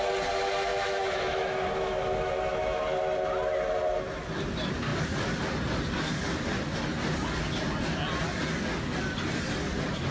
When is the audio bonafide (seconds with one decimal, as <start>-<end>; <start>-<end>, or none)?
0.0-0.7; 2.8-10.1

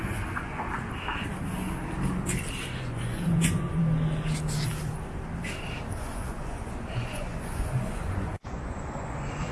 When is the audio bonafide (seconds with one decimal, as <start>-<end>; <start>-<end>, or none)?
0.7-2.7; 3.8-6.0

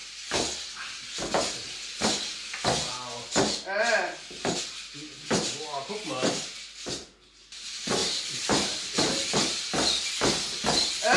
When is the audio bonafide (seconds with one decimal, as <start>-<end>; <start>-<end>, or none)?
0.0-8.0; 9.7-11.2

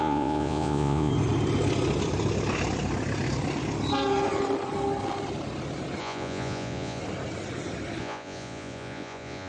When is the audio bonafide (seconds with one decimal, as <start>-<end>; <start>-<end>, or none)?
1.1-6.0; 7.0-8.0